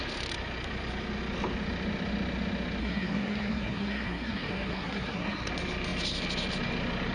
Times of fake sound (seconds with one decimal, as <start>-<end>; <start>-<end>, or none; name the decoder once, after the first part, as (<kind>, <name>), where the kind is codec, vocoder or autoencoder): 2.8-5.5 (codec, SNAC)